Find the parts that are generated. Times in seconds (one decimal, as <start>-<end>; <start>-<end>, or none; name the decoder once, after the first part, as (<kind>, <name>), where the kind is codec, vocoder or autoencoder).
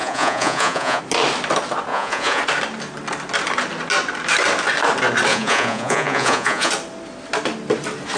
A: 0.0-1.0 (vocoder, Vocos); 1.9-2.4; 5.3-6.7